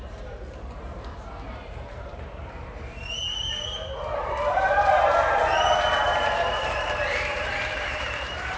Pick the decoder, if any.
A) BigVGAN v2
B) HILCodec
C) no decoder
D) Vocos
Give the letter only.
A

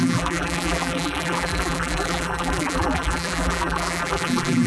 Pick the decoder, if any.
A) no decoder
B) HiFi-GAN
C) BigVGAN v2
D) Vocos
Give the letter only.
C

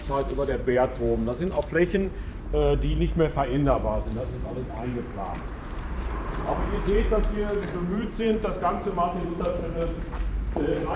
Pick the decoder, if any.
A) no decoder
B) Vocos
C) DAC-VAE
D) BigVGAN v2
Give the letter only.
D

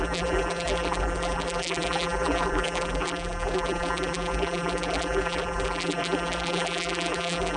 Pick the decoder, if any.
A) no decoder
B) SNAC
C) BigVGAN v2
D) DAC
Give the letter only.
C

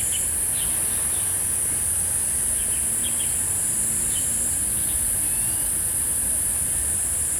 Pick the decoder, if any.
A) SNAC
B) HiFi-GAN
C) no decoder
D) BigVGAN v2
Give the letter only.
C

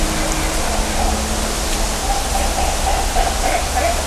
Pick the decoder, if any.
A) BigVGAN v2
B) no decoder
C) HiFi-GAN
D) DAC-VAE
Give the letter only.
B